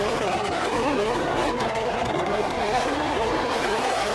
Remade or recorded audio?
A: remade